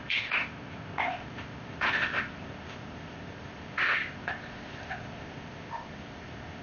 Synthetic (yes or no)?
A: yes